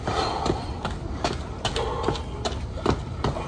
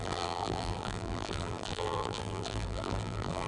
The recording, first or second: first